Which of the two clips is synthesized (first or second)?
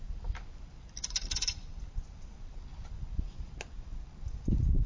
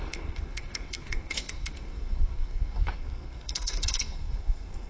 second